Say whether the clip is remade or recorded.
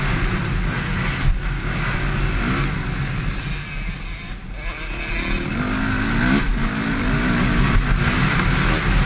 recorded